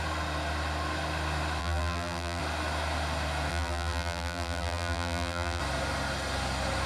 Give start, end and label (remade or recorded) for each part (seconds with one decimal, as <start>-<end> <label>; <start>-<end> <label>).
0.0-1.6 recorded; 1.6-2.4 remade; 2.4-3.5 recorded; 3.5-5.6 remade; 5.6-6.9 recorded